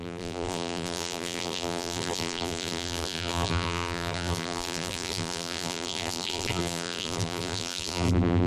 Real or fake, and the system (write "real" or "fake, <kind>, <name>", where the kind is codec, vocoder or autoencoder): fake, vocoder, BigVGAN v2